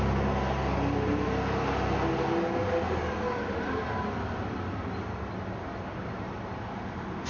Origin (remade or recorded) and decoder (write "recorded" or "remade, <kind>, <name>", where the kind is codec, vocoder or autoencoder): recorded